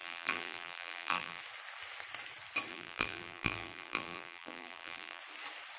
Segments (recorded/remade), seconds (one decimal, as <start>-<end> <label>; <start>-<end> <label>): 0.0-1.4 remade; 1.4-2.7 recorded; 2.7-5.2 remade; 5.2-5.8 recorded